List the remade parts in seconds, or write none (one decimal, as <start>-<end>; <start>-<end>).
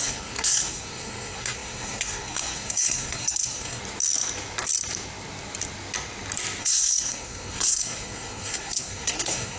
0.0-3.8; 6.6-9.6